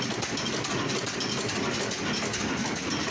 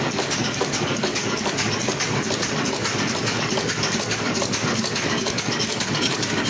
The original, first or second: first